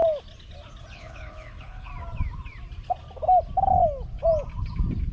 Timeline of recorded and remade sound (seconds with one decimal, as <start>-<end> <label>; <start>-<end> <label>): 0.0-0.9 recorded; 0.9-1.9 remade; 1.9-5.1 recorded